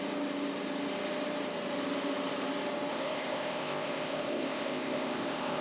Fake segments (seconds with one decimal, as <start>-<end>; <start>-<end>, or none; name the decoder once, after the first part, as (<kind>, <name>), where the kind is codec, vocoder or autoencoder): 2.9-5.6 (codec, ZipCodec)

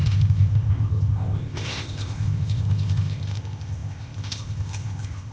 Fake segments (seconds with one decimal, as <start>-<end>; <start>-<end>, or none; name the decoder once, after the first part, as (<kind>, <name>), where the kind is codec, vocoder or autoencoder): 0.0-5.3 (codec, ZipCodec)

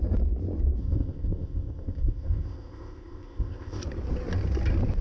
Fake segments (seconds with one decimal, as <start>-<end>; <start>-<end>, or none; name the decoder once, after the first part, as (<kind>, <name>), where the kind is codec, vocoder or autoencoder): 0.8-3.8 (codec, ZipCodec)

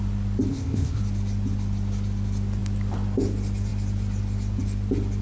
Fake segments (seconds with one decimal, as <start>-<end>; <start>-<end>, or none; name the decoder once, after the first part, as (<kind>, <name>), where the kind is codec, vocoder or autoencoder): 0.5-1.0 (codec, ZipCodec)

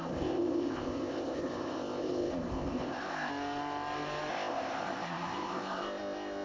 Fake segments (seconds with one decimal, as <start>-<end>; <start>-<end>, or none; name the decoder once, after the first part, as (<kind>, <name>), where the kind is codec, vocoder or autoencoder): 0.0-3.3 (codec, ZipCodec); 4.3-6.4

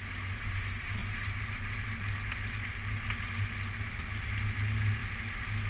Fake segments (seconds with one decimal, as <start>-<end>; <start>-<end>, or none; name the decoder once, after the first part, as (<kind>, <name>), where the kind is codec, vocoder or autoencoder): none